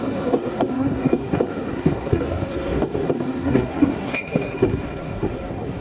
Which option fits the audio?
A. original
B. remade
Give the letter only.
B